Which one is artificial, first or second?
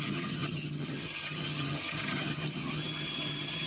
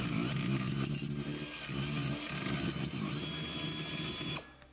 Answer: first